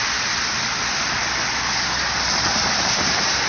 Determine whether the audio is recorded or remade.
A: remade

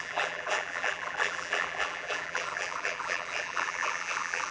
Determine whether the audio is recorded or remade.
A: remade